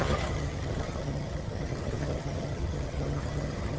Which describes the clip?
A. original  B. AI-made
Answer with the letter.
B